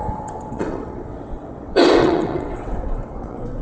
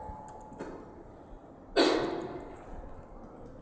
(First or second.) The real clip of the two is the second